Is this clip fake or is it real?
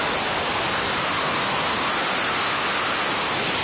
real